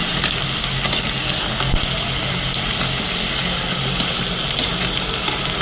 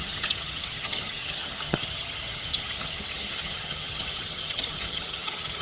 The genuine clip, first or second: first